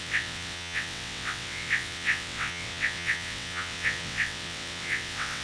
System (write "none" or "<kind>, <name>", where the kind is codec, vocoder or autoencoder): vocoder, WaveNeXt